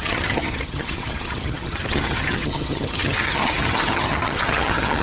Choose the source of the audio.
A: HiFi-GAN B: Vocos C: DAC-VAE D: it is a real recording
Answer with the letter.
A